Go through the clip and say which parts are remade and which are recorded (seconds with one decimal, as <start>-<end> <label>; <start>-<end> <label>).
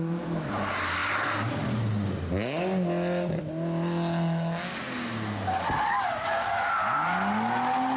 0.0-8.0 recorded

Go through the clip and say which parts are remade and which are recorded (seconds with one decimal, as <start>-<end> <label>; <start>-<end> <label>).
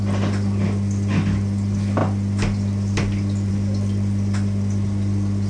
0.0-5.5 recorded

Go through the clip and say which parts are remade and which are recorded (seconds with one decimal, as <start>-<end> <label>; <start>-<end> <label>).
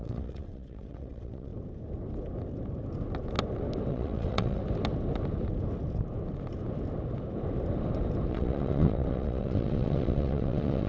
0.0-1.5 remade; 1.5-3.9 recorded; 3.9-4.6 remade; 4.6-8.3 recorded; 8.3-10.9 remade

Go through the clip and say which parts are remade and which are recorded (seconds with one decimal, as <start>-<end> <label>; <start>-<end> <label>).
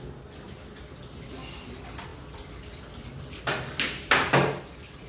0.0-5.1 recorded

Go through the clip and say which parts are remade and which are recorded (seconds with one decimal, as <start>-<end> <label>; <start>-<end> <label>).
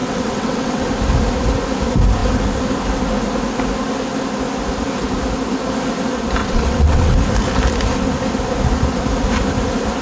0.0-0.9 remade; 0.9-6.4 recorded; 6.4-7.2 remade; 7.2-10.0 recorded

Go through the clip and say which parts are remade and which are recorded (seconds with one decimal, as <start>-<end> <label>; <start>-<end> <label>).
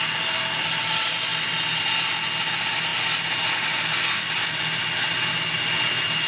0.0-6.3 recorded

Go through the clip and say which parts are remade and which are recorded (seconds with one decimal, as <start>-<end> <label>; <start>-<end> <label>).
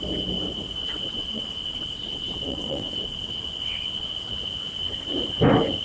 0.0-0.8 recorded; 0.8-4.3 remade; 4.3-5.8 recorded